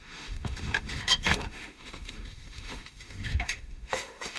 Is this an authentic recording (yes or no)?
no